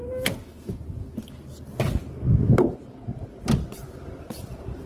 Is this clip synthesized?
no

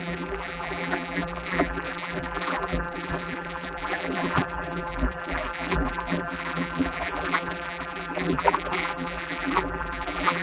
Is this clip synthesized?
yes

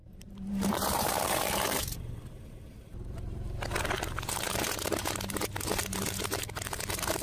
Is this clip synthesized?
yes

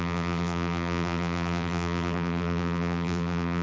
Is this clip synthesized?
yes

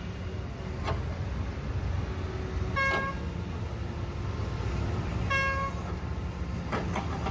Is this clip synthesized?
no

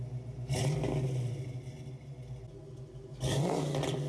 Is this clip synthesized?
no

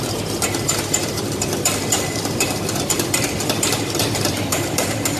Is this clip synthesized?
yes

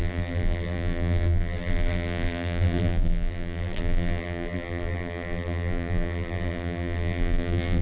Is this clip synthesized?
yes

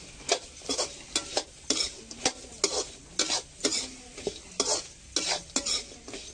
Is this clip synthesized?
no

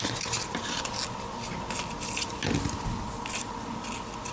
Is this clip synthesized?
no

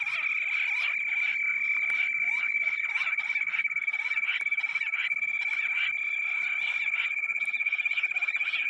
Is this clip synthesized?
no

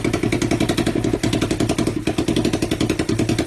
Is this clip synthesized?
no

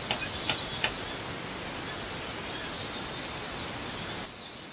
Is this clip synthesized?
no